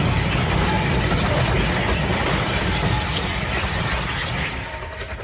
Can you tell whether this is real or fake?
real